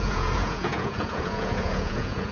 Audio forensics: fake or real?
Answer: fake